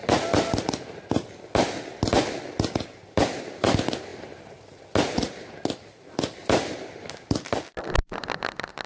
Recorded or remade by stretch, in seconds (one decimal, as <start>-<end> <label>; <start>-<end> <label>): 0.0-8.9 recorded